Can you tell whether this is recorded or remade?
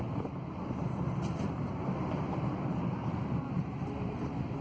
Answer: recorded